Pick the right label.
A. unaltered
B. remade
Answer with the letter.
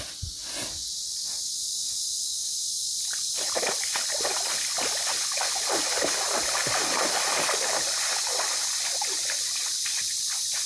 A